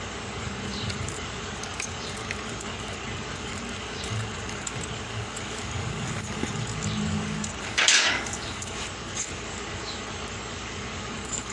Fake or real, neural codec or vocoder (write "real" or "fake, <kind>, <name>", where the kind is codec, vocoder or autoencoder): fake, codec, DAC